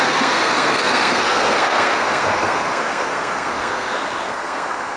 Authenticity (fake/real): fake